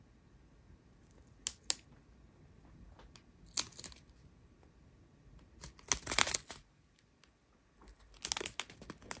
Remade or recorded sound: recorded